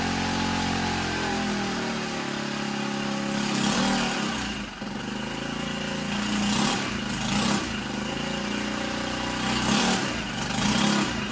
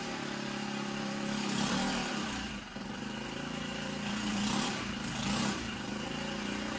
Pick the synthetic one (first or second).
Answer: second